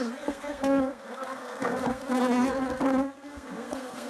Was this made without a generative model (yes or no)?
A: no